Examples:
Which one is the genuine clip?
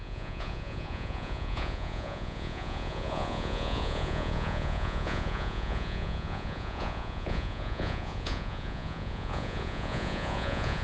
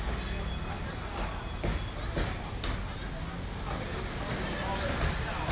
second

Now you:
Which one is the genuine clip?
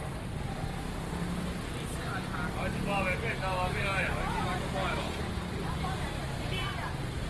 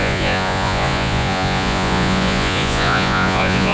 first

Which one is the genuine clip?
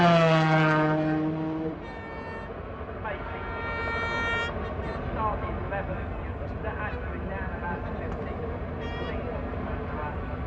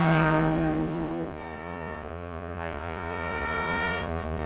first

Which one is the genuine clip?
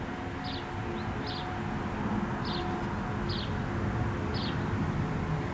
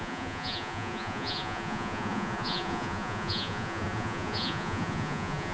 first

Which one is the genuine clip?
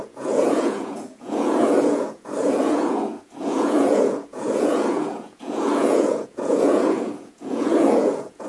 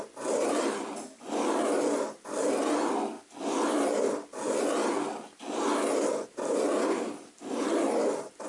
second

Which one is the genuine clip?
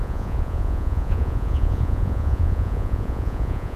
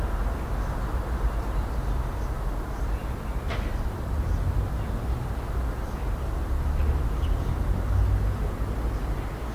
second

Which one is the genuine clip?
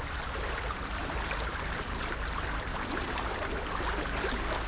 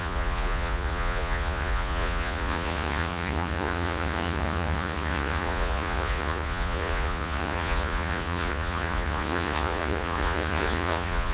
first